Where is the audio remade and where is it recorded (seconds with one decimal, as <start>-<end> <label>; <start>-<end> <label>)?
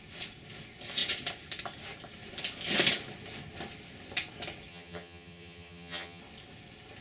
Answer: 0.0-4.7 recorded; 4.7-6.2 remade; 6.2-7.0 recorded